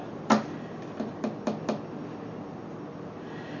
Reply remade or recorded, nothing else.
recorded